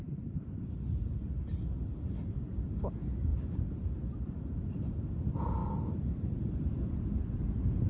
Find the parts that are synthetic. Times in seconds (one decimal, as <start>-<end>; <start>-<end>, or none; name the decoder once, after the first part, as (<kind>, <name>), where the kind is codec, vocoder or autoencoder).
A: none